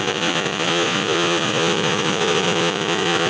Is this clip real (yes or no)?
no